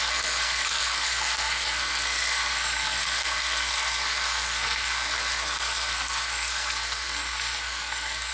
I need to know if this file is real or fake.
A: fake